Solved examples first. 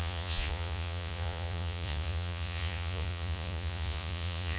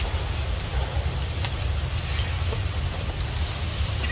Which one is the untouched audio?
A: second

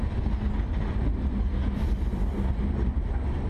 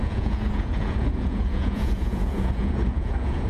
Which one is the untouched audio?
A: first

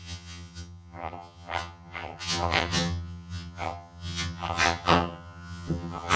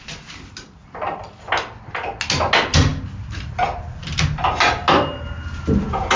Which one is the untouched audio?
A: second